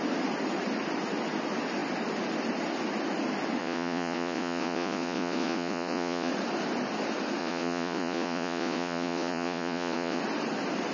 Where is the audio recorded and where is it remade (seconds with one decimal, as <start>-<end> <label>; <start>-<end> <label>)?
0.0-3.6 recorded; 3.6-6.3 remade; 6.3-7.4 recorded; 7.4-10.2 remade; 10.2-10.9 recorded